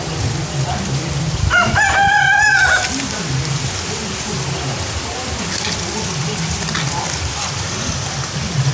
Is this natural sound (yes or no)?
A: yes